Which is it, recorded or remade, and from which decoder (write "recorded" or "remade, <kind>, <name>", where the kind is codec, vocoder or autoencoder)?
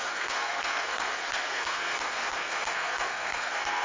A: remade, codec, SNAC